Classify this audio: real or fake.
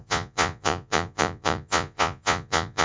fake